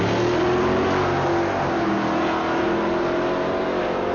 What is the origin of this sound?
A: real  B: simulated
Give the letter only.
A